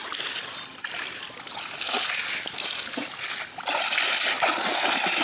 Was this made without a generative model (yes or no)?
yes